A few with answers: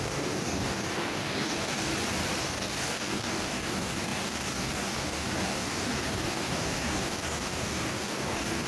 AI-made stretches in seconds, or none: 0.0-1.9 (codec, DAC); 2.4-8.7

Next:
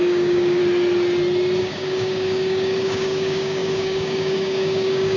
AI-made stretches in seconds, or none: 0.0-0.6 (codec, DAC); 1.6-5.2

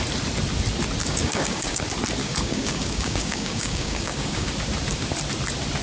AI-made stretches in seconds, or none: 1.0-1.8 (codec, DAC); 2.2-4.5